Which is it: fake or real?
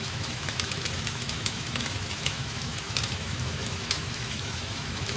fake